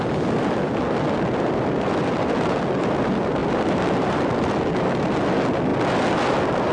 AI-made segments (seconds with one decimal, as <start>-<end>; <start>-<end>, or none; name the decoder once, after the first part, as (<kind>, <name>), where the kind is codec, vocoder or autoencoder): none